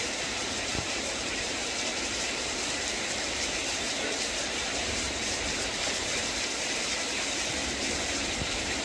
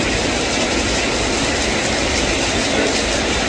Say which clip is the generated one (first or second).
first